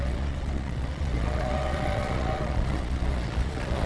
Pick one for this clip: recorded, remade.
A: remade